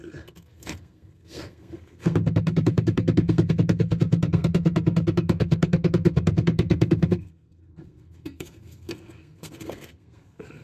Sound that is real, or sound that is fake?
fake